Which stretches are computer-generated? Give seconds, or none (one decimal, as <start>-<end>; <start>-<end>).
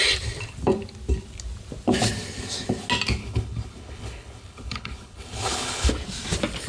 3.2-5.9